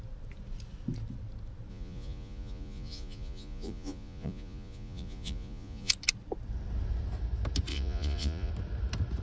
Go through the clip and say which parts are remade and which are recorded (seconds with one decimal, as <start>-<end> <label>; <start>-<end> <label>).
0.0-1.7 recorded; 1.7-5.9 remade; 5.9-7.7 recorded; 7.7-8.5 remade; 8.5-9.2 recorded